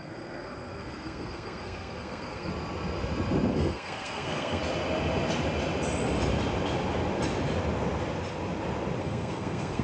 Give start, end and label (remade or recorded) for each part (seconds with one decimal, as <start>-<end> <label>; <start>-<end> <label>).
0.0-2.5 remade; 2.5-3.5 recorded; 3.5-4.6 remade; 4.6-9.0 recorded; 9.0-9.8 remade